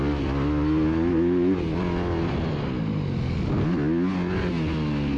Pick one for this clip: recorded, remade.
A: recorded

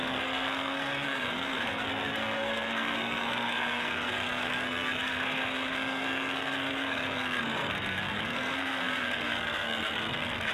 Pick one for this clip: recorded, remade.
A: remade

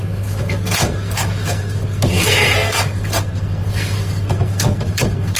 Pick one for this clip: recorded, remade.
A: remade